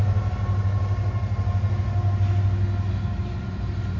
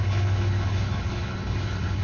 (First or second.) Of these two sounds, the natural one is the first